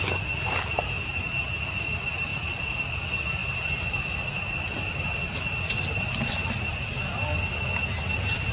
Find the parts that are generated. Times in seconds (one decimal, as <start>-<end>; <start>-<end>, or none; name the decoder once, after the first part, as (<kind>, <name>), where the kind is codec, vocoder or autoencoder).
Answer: none